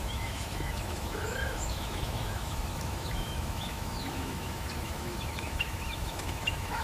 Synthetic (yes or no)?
yes